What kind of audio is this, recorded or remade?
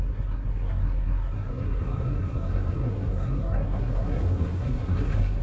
remade